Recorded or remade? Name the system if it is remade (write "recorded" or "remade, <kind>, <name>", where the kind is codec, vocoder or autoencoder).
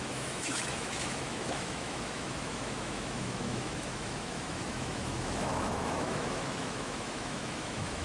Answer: remade, autoencoder, DAC-VAE